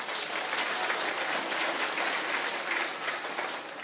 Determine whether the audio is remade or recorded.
recorded